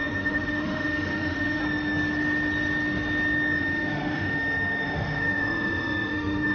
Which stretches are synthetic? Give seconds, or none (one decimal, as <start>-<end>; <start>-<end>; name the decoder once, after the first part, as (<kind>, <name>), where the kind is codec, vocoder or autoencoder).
0.0-1.6 (autoencoder, DAC-VAE); 3.6-6.5